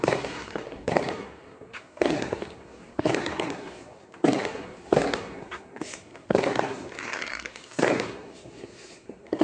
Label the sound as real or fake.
fake